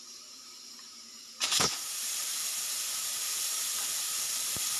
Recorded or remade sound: remade